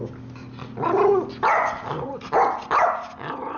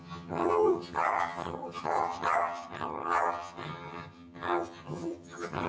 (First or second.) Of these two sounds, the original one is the first